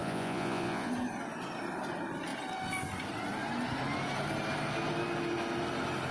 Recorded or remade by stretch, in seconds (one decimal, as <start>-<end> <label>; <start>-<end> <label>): 0.0-0.9 remade; 0.9-6.1 recorded